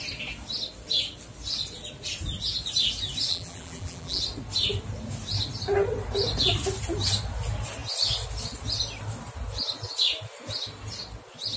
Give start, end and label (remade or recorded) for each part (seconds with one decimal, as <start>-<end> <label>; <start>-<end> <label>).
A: 0.0-3.3 recorded; 3.3-4.2 remade; 4.2-11.6 recorded